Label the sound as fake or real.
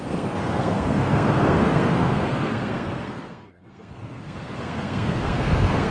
fake